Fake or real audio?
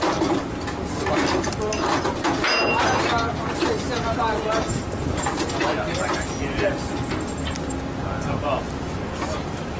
real